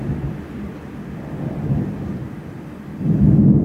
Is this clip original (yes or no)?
yes